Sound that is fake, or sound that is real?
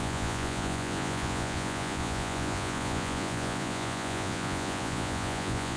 fake